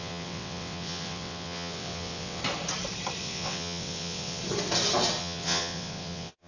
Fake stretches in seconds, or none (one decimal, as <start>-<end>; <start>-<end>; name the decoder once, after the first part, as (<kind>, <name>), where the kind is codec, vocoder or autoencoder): 0.0-2.4 (vocoder, WaveNeXt); 3.2-4.4; 5.2-6.5